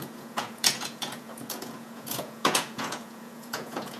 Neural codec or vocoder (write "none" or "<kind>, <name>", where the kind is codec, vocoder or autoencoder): vocoder, Vocos